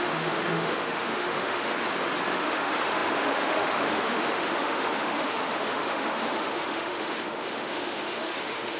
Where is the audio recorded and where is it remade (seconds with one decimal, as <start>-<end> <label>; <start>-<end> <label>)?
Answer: 0.0-1.7 remade; 1.7-2.3 recorded; 2.3-8.8 remade